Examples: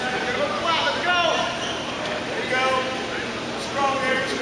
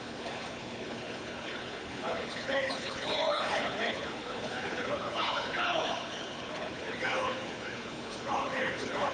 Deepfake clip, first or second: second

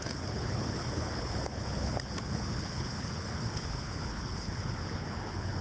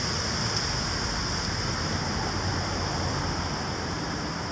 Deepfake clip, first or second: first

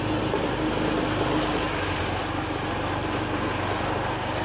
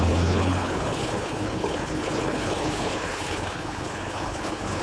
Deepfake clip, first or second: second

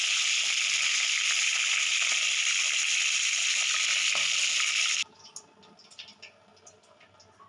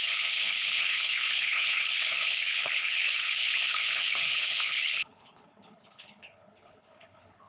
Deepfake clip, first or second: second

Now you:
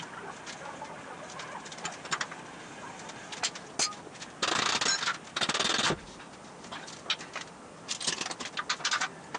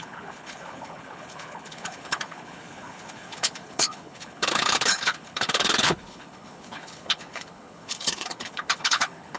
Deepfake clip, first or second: second